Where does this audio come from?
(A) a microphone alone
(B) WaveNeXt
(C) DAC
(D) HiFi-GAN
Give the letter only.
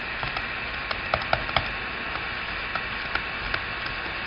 A